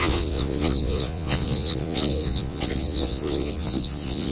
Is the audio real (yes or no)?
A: no